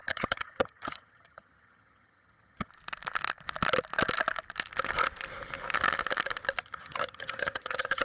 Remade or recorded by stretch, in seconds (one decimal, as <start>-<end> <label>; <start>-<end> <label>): 0.0-2.7 remade; 2.7-6.6 recorded; 6.6-8.0 remade